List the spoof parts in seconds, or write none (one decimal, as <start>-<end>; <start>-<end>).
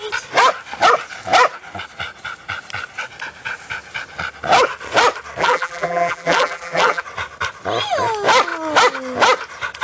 5.4-7.0